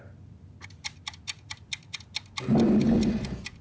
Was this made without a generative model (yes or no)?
yes